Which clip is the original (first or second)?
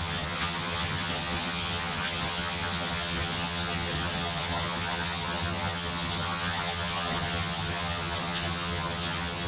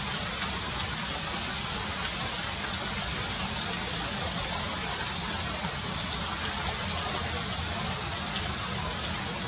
second